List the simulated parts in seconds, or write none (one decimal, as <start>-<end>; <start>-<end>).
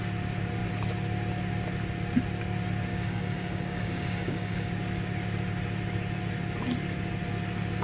2.9-4.7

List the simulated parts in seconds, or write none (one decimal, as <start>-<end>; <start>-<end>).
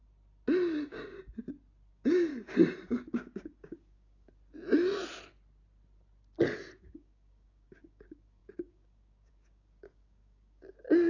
1.9-2.3; 2.9-4.3; 6.7-11.1